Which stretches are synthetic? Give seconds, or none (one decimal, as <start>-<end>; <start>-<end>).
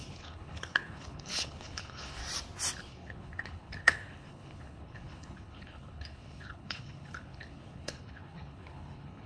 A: 0.0-2.2; 2.8-9.3